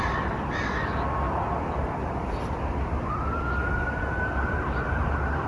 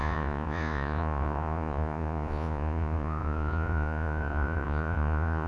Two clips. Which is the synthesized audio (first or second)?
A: second